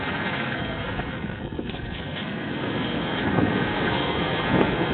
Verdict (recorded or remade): remade